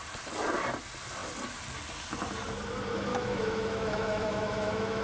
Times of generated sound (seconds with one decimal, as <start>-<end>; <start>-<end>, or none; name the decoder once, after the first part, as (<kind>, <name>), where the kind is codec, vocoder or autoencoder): 3.1-5.0 (autoencoder, DAC-VAE)